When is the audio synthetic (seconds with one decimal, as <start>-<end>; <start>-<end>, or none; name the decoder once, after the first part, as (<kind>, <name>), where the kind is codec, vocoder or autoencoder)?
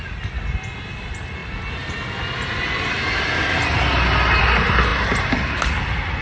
none